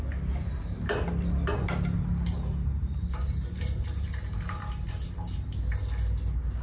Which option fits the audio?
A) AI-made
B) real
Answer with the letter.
B